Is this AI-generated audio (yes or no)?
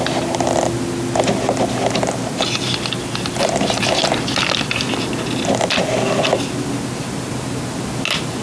no